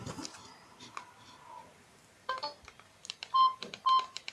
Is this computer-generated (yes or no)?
yes